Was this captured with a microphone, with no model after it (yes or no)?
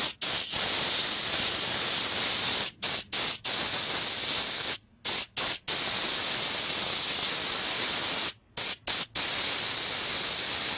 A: yes